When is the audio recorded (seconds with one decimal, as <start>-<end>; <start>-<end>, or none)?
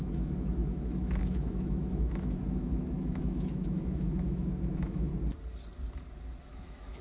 5.1-6.4